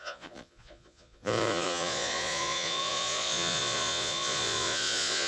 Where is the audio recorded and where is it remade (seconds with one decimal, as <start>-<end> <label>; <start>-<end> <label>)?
0.0-5.3 remade

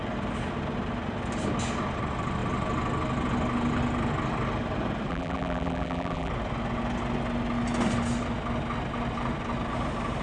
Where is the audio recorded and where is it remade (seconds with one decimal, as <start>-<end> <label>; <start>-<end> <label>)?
0.0-5.1 recorded; 5.1-6.3 remade; 6.3-10.2 recorded

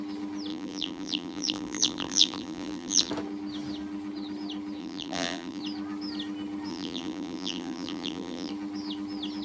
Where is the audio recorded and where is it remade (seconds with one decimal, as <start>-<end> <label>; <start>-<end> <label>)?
0.0-0.5 recorded; 0.5-3.1 remade; 3.1-4.8 recorded; 4.8-5.6 remade; 5.6-6.7 recorded; 6.7-8.5 remade; 8.5-9.4 recorded

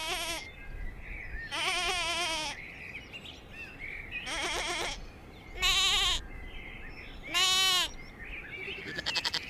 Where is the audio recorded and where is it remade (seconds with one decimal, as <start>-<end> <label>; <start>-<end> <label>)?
0.0-9.5 recorded